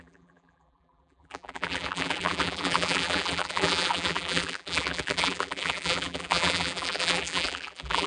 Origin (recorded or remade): remade